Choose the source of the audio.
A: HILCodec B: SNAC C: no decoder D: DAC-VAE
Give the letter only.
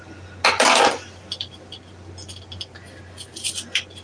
C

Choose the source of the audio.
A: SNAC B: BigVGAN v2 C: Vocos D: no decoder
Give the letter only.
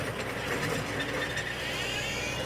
D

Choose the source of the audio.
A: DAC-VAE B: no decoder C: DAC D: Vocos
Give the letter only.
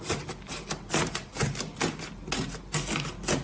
B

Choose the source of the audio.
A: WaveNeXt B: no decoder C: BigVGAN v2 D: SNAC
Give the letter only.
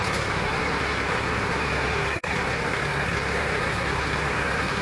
D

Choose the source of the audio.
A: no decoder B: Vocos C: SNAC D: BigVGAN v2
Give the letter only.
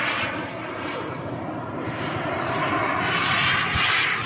D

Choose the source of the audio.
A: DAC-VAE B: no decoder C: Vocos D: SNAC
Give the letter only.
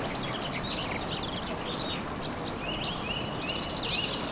B